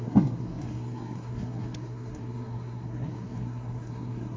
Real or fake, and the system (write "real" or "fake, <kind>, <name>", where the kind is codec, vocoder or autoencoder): fake, codec, SNAC